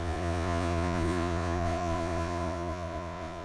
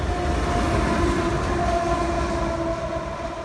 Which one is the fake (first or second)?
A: first